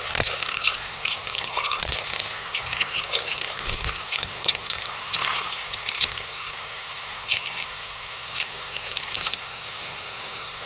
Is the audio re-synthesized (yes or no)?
yes